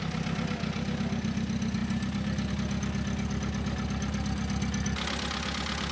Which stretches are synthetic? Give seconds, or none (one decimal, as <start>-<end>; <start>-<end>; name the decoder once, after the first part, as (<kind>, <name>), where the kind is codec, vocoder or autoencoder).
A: none